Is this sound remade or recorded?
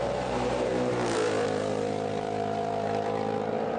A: remade